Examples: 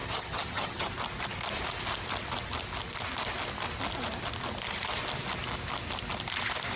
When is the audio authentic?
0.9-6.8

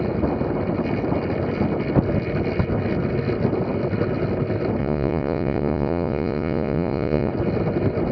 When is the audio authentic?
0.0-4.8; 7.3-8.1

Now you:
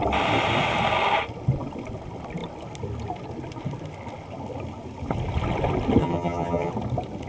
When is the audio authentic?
0.0-6.0; 6.7-7.3

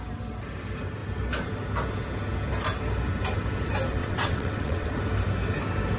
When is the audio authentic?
0.0-4.0; 4.9-6.0

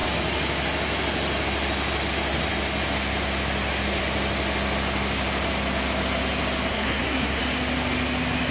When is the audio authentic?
0.0-6.7; 7.4-8.5

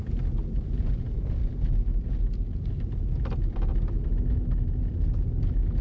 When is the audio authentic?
0.0-5.8

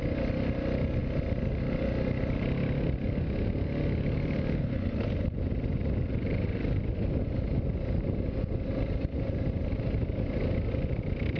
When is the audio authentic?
0.0-11.4

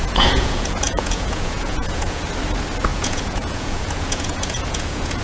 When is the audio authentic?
2.3-2.9